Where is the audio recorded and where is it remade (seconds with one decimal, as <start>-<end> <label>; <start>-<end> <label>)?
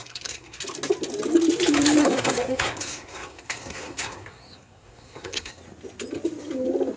0.0-0.6 remade; 0.6-2.0 recorded; 2.0-5.6 remade; 5.6-7.0 recorded